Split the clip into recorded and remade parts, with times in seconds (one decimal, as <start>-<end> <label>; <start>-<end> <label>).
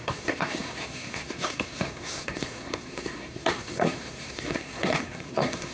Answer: 0.0-5.7 remade